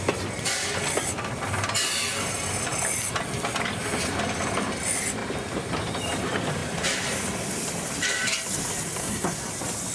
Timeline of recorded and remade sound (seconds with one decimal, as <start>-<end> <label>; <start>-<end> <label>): 0.0-9.0 recorded; 9.0-9.5 remade; 9.5-9.9 recorded